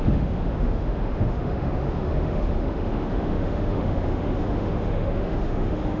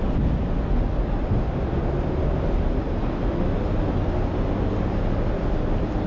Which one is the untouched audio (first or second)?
second